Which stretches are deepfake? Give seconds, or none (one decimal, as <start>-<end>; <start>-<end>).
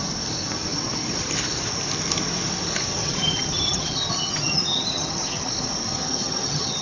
3.0-5.5; 6.0-6.8